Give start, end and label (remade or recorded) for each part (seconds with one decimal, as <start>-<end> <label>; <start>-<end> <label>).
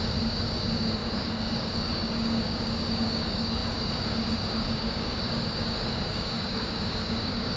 0.0-7.6 remade